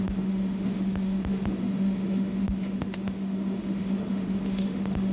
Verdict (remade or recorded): remade